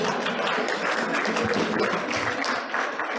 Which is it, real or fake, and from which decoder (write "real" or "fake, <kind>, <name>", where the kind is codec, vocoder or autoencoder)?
real